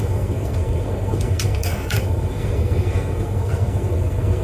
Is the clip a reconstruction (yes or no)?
yes